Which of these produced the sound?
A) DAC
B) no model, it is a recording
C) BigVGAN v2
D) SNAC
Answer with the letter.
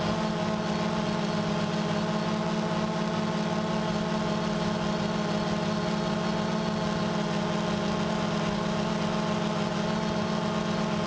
B